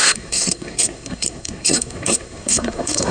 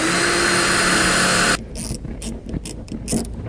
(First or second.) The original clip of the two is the second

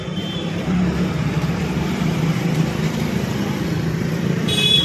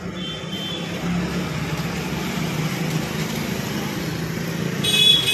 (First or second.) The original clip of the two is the second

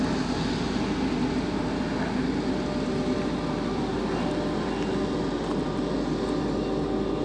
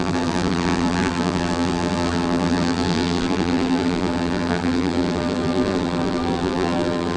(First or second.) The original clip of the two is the first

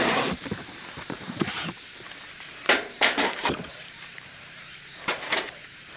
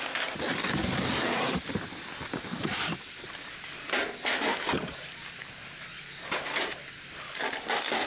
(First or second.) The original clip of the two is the second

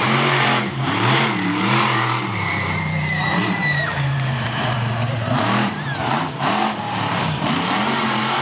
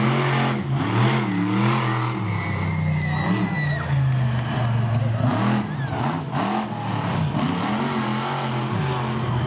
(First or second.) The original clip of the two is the second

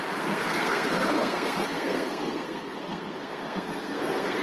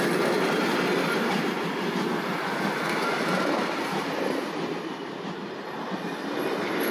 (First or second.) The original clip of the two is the second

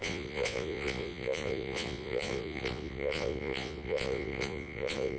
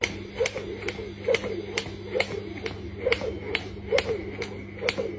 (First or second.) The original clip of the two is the second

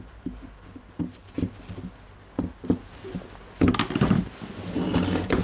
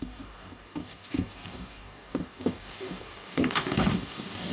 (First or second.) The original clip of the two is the first